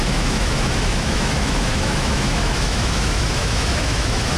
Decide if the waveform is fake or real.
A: fake